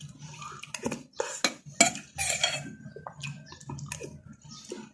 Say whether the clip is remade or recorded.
recorded